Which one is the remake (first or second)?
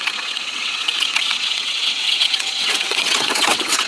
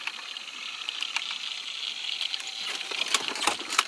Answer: first